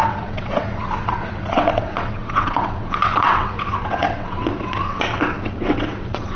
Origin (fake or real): fake